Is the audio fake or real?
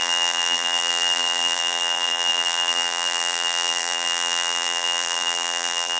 fake